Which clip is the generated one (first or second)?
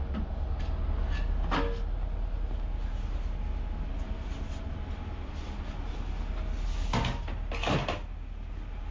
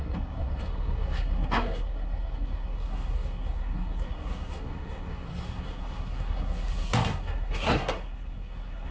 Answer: second